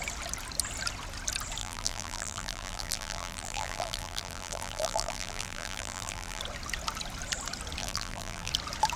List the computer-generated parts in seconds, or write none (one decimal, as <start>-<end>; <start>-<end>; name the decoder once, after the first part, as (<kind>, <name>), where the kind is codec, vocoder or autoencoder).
1.6-6.4 (vocoder, BigVGAN v2); 7.8-8.5